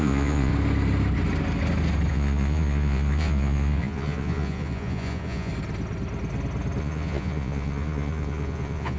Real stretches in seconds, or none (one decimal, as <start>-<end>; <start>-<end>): 0.5-2.1; 5.5-6.8